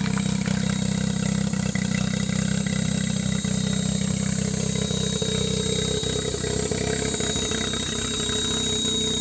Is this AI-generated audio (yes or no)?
no